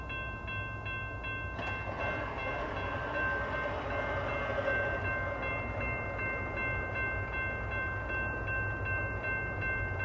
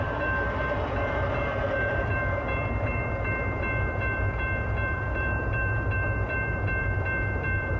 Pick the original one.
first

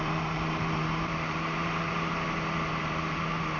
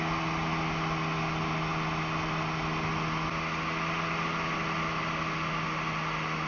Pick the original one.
second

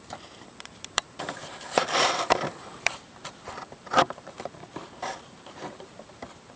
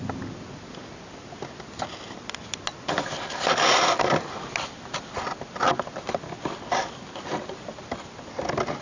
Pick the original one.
second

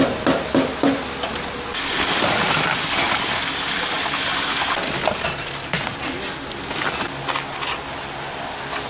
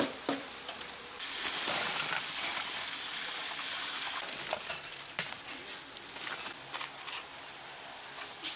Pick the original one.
first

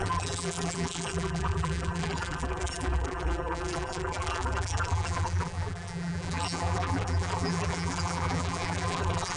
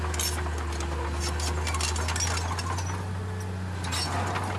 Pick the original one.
second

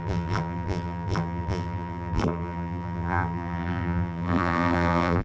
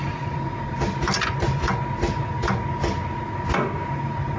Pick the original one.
second